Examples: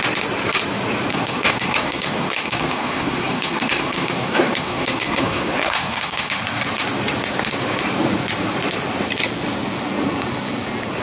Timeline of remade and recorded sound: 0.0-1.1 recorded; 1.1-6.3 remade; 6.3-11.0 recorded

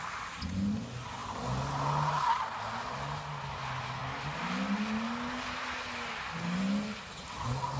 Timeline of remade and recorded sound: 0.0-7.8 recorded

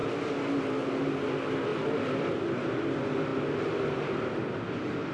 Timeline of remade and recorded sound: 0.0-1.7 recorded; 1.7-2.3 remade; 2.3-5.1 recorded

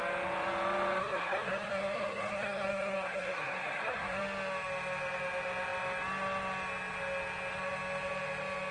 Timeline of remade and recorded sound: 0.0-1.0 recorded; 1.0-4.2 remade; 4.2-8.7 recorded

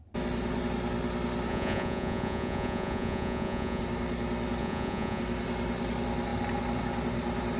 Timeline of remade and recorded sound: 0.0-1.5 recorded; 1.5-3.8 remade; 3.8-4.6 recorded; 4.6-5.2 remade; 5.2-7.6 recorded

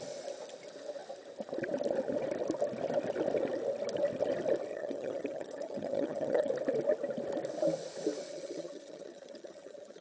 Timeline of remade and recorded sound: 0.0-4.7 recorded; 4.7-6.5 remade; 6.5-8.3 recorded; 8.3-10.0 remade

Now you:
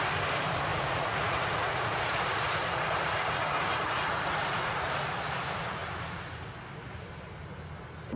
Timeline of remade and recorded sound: 0.0-0.7 recorded; 0.7-5.1 remade; 5.1-8.2 recorded

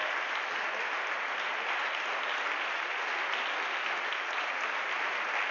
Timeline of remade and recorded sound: 0.0-5.5 recorded